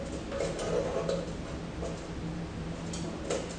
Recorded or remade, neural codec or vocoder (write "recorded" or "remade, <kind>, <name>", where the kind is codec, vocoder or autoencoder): recorded